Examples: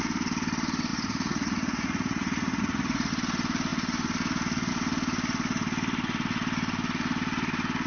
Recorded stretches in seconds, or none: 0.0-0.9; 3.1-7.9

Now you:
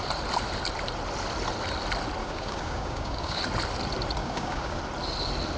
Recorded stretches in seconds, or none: 0.0-2.2; 3.4-4.2; 4.8-5.6

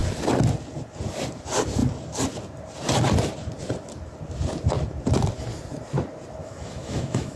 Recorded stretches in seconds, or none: 0.0-6.4

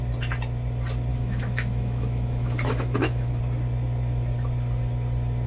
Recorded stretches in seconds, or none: 0.0-1.1; 3.4-5.5